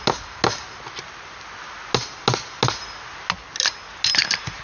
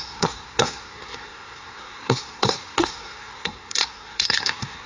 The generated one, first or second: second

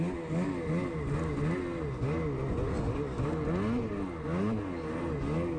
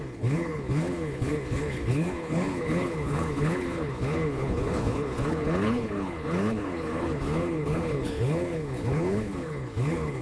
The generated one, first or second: second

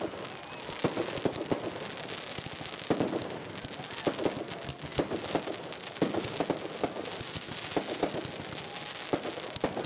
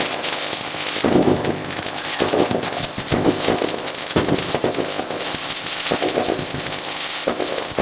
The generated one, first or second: second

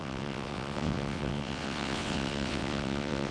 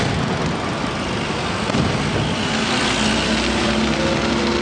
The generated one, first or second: first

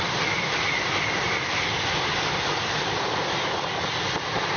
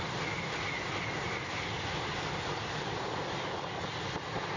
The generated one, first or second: first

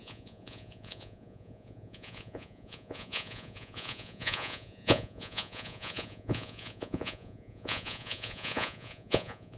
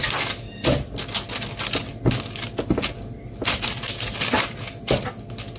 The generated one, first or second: first